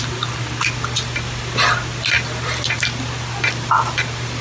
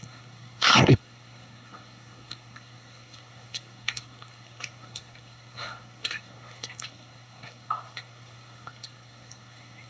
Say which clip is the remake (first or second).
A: second